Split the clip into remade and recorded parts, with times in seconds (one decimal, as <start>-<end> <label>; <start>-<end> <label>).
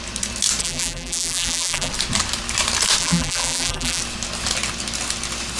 0.0-0.6 recorded; 0.6-1.9 remade; 1.9-3.0 recorded; 3.0-4.0 remade; 4.0-5.6 recorded